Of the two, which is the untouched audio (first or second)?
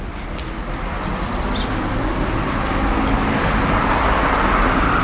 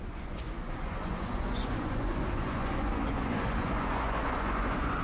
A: first